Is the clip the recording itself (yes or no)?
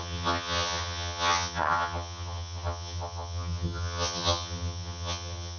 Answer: no